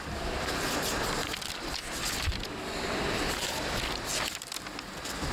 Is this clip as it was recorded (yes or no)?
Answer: yes